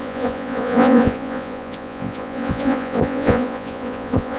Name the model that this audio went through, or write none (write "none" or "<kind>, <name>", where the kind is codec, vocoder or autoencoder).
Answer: vocoder, Vocos